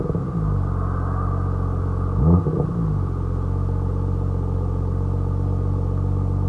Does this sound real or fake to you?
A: real